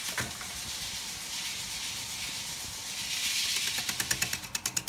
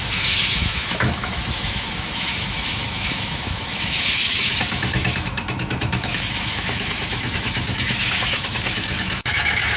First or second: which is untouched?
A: first